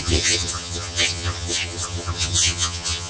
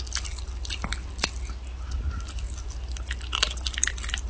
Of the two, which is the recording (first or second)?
second